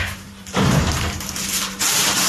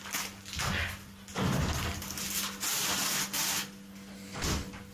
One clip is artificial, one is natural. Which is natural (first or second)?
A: second